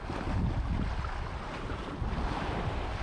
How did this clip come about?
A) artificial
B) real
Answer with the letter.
B